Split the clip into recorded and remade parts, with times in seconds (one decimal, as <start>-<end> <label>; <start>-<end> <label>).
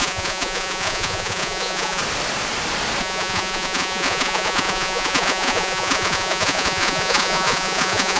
0.0-2.0 remade; 2.0-3.0 recorded; 3.0-8.2 remade